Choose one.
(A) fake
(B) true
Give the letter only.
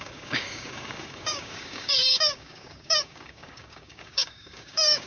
A